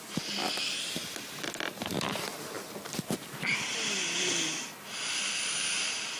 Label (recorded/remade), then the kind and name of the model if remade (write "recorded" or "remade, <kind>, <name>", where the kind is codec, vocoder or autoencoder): remade, vocoder, BigVGAN v2